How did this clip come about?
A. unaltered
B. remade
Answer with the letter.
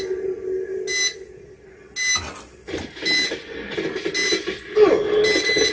A